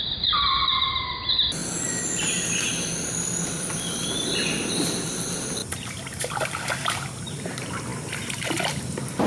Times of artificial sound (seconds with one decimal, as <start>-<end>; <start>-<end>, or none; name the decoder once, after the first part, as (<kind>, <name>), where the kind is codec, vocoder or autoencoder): 0.0-7.9 (vocoder, BigVGAN v2); 8.4-9.3